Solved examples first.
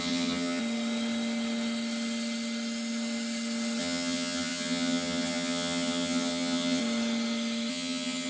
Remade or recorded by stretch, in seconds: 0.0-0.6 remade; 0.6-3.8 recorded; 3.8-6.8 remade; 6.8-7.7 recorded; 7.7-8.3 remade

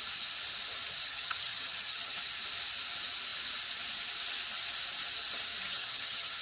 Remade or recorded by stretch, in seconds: 0.0-1.0 recorded; 1.0-2.2 remade; 2.2-5.6 recorded; 5.6-6.4 remade